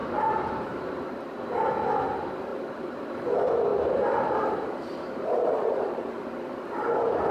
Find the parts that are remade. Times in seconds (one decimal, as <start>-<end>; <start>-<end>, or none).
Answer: 0.0-1.3; 2.5-3.1; 3.7-6.2